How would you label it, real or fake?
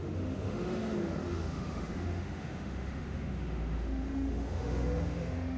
fake